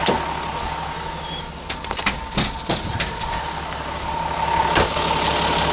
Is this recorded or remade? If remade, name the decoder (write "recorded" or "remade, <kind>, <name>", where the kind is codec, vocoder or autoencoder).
recorded